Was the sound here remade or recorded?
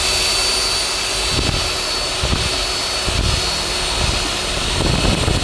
recorded